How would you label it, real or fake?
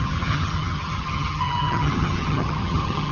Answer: fake